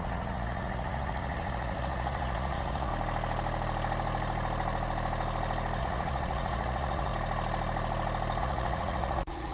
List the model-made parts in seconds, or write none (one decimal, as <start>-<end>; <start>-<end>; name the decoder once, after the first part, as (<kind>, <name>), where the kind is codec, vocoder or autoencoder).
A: 0.0-2.9 (vocoder, Vocos); 5.8-7.1; 8.4-9.5